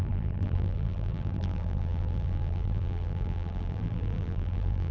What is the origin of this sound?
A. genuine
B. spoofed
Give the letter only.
B